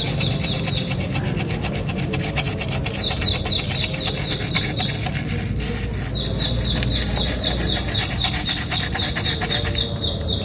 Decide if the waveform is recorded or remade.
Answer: recorded